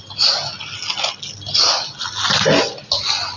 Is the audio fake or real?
real